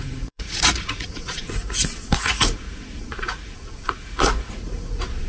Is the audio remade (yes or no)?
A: yes